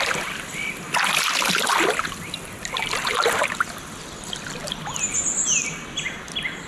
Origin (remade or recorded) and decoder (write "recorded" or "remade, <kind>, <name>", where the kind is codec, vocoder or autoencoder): recorded